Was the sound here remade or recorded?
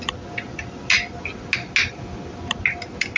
recorded